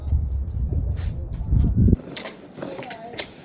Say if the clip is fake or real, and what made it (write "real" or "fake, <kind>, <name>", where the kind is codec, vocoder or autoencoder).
fake, vocoder, BigVGAN v2